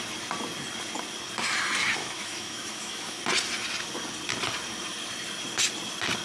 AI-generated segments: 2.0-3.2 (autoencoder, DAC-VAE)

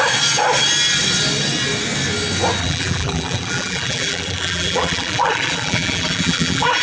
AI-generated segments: 2.6-6.8 (vocoder, BigVGAN v2)